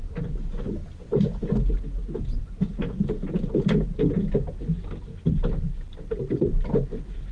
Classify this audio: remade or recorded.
recorded